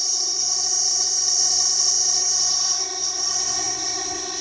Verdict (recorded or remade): remade